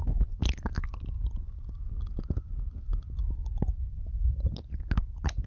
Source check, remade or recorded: recorded